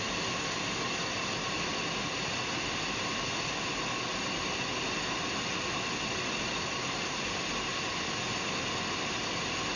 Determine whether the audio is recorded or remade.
recorded